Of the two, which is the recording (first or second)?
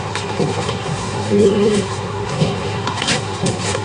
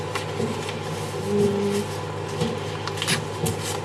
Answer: second